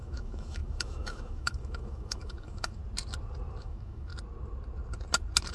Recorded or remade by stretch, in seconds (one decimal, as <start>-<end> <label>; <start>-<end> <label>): 0.0-2.8 remade; 2.8-3.6 recorded; 3.6-4.1 remade; 4.1-5.5 recorded